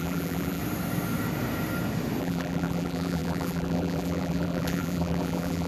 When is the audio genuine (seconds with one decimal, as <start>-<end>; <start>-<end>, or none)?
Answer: 0.6-2.2